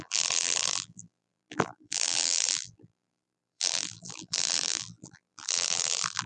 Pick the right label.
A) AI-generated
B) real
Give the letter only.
A